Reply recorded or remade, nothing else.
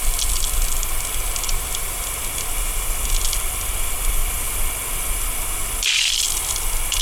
recorded